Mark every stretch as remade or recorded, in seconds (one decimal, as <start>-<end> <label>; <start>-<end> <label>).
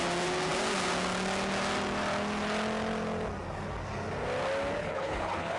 0.0-4.8 recorded; 4.8-5.6 remade